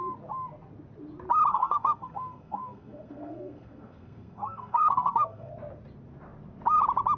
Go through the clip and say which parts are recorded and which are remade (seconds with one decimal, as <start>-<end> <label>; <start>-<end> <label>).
0.0-1.5 recorded; 1.5-5.5 remade; 5.5-7.2 recorded

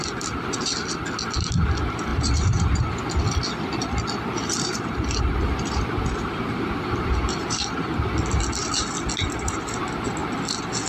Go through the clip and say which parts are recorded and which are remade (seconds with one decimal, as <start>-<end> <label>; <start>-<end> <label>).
0.0-10.9 recorded